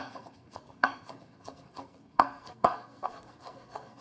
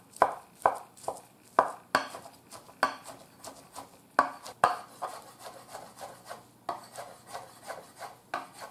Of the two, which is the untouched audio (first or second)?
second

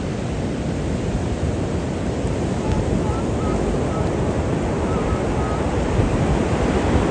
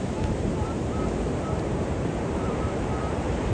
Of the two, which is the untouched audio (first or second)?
first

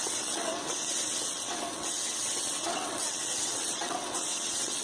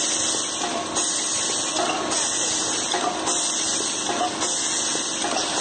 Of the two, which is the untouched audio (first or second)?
second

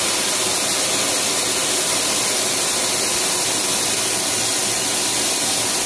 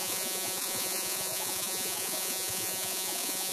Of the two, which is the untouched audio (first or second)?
first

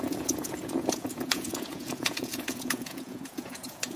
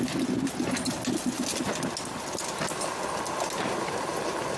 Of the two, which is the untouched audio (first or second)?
second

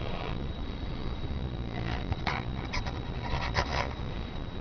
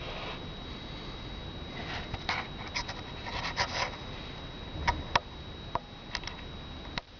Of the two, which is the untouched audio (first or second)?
second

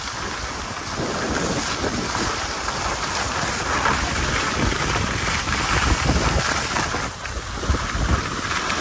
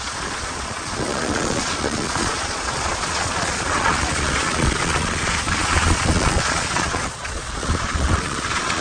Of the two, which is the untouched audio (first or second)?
first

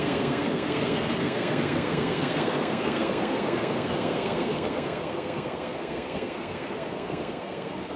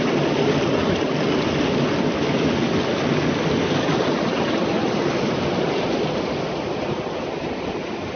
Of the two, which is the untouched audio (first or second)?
second